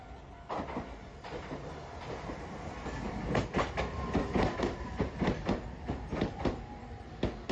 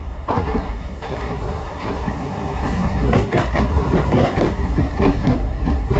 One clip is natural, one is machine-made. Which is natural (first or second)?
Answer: first